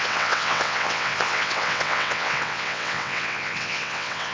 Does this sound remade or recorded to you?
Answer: remade